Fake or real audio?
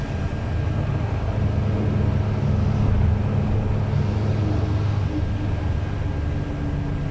real